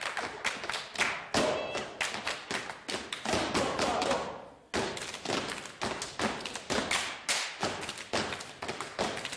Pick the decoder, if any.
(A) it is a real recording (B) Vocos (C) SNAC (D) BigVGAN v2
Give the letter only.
A